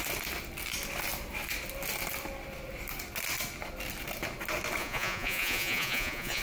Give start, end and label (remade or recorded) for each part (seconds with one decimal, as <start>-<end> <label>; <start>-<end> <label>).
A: 0.0-4.8 recorded; 4.8-6.4 remade